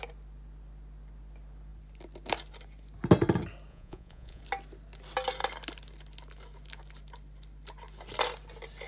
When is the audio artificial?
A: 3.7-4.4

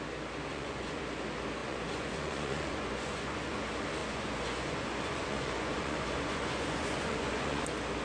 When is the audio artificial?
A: 0.5-1.0; 1.6-3.6; 4.0-7.6

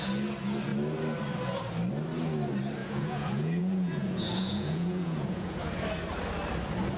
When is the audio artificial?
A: 2.8-5.6

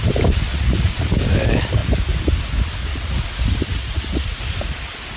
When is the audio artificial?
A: 0.5-1.1; 2.9-3.4; 3.8-4.4

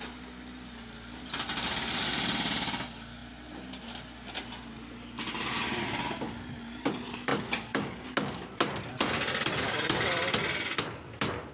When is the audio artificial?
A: none

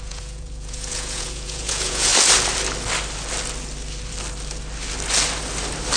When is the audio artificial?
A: 0.0-2.1

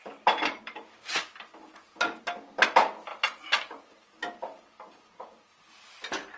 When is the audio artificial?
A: 1.6-2.2